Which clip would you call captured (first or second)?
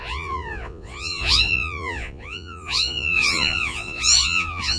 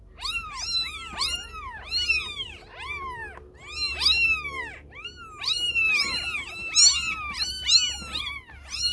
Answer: second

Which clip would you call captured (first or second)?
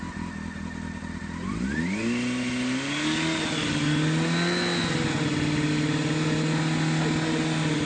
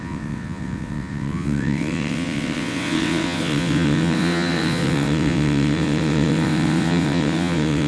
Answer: first